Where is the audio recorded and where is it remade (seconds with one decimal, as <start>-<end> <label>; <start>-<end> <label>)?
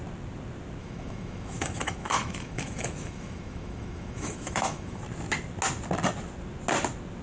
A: 0.0-0.8 recorded; 0.8-5.0 remade; 5.0-7.2 recorded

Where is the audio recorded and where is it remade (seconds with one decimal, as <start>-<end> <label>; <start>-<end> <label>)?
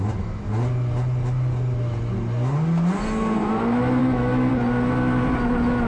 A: 0.0-4.0 recorded; 4.0-4.5 remade; 4.5-5.9 recorded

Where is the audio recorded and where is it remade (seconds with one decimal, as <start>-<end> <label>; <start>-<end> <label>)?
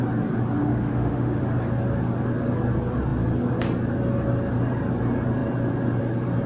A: 0.0-0.6 recorded; 0.6-1.4 remade; 1.4-6.5 recorded